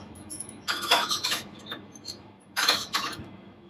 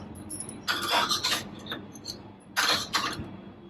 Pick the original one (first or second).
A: second